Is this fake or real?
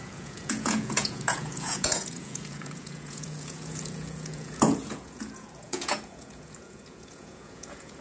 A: fake